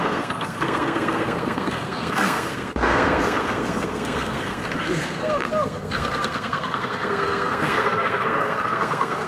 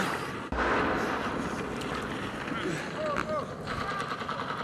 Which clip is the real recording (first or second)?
second